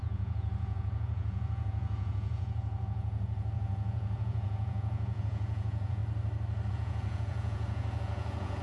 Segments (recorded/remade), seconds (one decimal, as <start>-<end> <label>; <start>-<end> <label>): 0.0-6.0 remade; 6.0-6.7 recorded; 6.7-8.6 remade